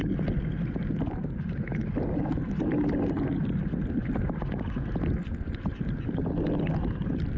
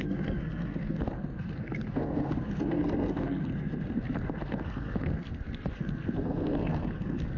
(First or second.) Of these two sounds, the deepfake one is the second